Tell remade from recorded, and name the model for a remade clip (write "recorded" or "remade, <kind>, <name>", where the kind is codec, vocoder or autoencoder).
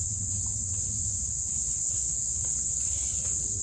remade, vocoder, WaveNeXt